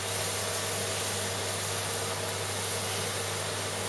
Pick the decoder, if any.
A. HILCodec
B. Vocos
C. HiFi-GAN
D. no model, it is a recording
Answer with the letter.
D